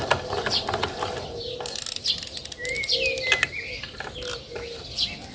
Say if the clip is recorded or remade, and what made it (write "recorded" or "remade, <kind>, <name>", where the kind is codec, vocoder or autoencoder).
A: recorded